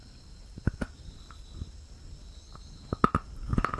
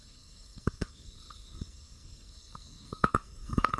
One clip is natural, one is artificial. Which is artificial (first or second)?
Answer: second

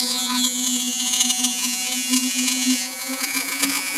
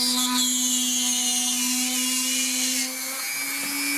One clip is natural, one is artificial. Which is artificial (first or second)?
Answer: first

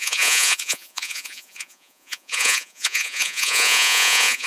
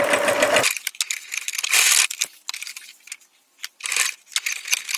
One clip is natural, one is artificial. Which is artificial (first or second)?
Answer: first